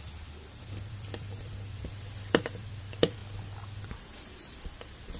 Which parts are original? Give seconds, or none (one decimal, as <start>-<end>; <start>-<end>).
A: 3.2-3.8